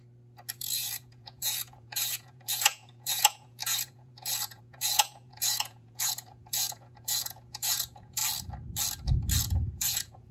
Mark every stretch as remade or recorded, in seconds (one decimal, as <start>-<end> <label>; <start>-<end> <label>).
0.0-0.5 recorded; 0.5-8.2 remade; 8.2-9.4 recorded; 9.4-10.3 remade